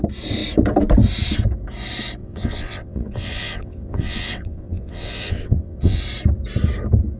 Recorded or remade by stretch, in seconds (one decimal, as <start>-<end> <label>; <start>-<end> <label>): 0.0-2.2 recorded; 2.2-6.0 remade; 6.0-7.2 recorded